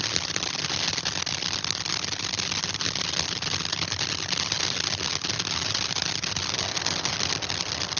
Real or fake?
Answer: real